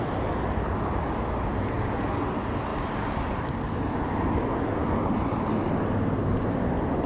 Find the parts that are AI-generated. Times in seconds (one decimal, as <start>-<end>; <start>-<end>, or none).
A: none